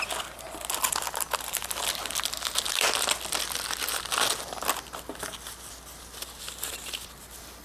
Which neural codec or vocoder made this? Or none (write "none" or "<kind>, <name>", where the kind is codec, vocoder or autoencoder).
none